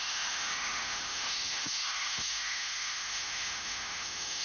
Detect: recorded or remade remade